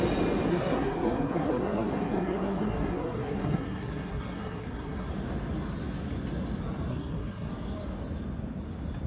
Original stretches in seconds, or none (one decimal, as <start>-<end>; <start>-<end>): 0.0-0.5; 5.1-6.9; 7.5-9.1